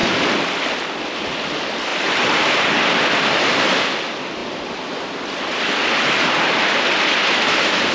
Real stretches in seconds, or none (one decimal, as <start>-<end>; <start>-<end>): 0.0-1.9; 3.8-7.9